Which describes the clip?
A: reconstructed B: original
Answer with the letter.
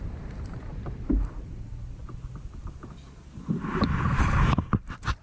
B